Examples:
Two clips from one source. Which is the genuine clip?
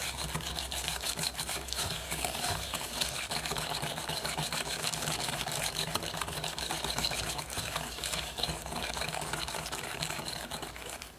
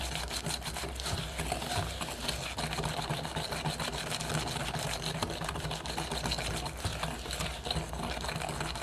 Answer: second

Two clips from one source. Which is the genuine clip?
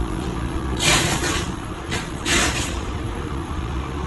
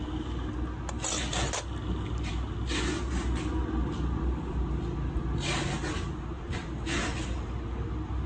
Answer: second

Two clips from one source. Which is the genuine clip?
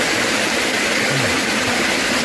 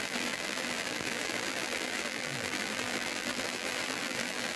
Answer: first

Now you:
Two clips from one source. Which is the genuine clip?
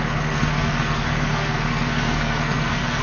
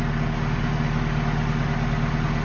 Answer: second